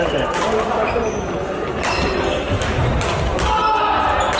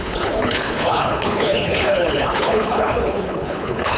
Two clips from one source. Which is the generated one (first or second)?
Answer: second